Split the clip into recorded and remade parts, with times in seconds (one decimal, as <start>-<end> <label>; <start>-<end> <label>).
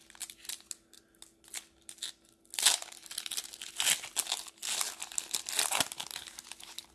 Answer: 0.0-6.9 recorded